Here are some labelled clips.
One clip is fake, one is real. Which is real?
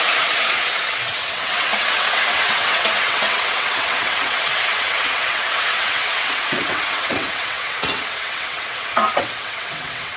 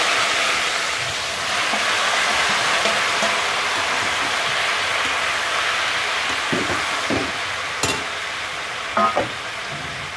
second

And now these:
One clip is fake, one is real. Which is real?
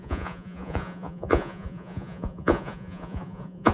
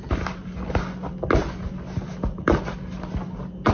second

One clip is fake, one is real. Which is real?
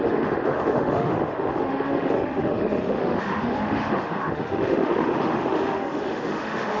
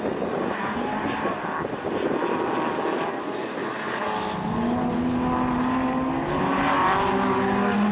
second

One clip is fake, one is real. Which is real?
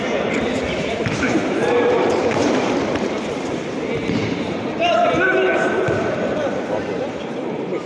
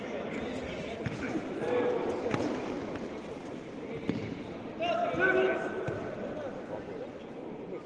second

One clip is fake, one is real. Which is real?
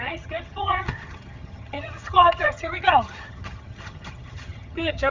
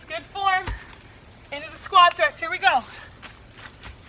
second